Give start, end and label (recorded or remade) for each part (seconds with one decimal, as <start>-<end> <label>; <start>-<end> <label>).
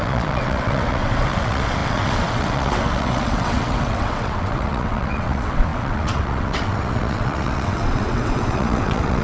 0.0-9.2 remade